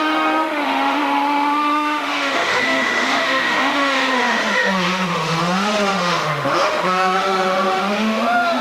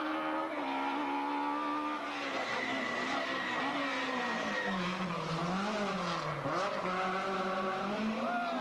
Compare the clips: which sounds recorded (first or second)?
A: second